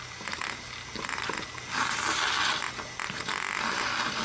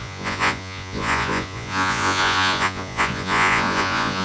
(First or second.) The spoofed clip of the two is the second